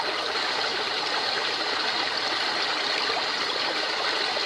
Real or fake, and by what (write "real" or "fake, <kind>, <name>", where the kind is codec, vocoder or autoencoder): real